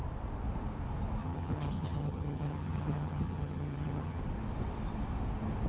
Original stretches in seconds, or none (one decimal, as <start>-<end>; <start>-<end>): 0.0-1.2; 4.2-5.7